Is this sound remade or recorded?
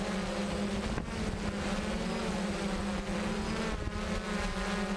recorded